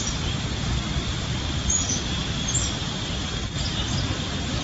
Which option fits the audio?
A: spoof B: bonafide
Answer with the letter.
B